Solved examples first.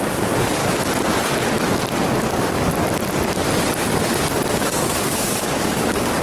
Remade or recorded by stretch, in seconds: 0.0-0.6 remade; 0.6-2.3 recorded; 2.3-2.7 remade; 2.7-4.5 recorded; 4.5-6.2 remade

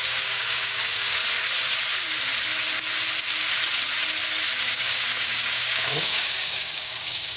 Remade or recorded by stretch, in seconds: 0.0-1.2 remade; 1.2-4.6 recorded; 4.6-7.4 remade

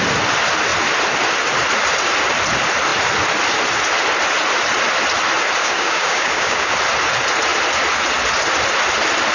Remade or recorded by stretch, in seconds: 0.0-5.6 recorded; 5.6-6.7 remade; 6.7-9.3 recorded

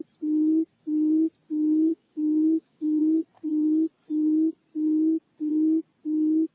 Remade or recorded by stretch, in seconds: 0.0-1.9 recorded; 1.9-3.0 remade; 3.0-6.5 recorded

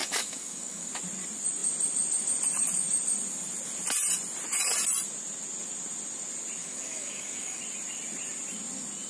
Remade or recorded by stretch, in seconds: 0.0-0.9 remade; 0.9-6.6 recorded; 6.6-7.6 remade; 7.6-9.1 recorded

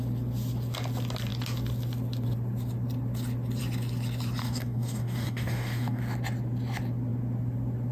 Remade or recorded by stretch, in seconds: 0.0-4.4 recorded; 4.4-6.0 remade; 6.0-7.9 recorded